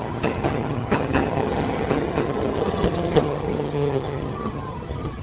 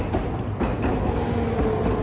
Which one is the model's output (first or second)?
first